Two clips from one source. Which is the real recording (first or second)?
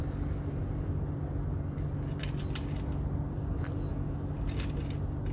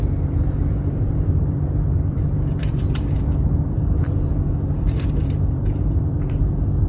first